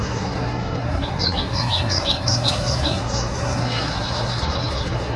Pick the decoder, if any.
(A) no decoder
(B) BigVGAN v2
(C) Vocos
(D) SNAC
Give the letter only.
D